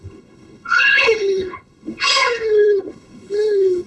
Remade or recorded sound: remade